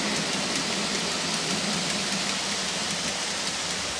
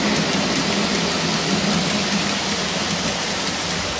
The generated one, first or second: first